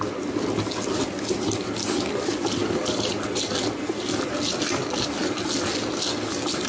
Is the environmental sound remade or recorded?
recorded